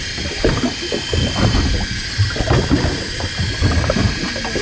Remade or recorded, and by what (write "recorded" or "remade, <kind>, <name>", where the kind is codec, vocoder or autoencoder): recorded